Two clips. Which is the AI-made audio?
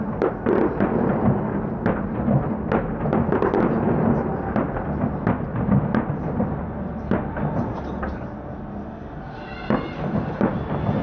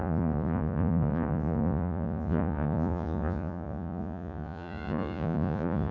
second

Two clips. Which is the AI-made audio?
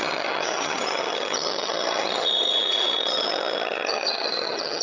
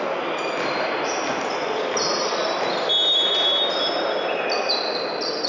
first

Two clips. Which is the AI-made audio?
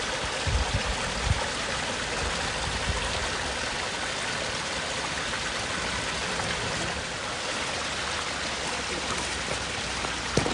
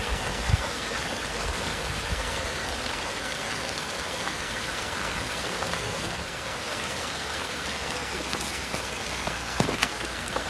second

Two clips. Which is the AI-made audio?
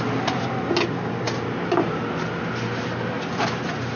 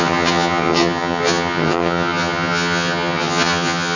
second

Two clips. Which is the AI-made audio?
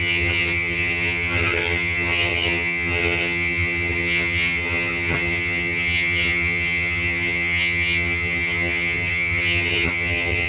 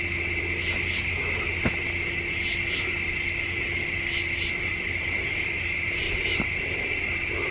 first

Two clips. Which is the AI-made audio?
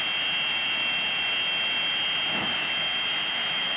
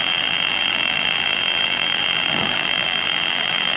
second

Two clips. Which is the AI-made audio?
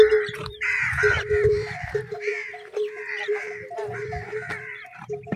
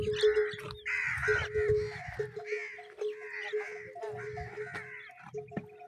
first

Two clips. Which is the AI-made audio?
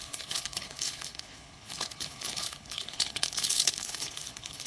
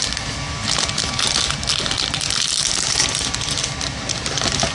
first